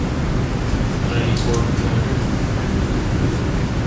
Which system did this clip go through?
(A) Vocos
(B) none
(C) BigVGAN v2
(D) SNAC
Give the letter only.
B